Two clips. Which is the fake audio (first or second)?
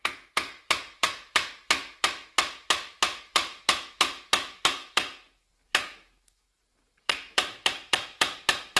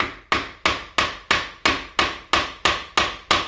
first